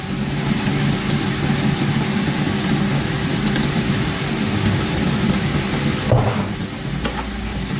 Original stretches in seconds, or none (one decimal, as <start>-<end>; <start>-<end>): 0.0-7.8